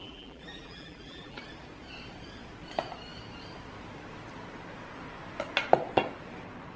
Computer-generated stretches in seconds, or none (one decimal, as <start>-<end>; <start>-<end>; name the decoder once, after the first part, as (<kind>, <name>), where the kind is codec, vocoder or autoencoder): 0.0-1.4 (vocoder, BigVGAN v2)